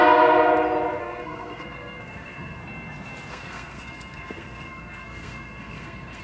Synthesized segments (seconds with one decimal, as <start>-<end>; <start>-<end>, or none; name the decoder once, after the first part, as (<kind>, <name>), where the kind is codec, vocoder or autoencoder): 1.0-2.6 (codec, SNAC); 3.3-6.2